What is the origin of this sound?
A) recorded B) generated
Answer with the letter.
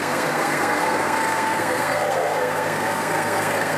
B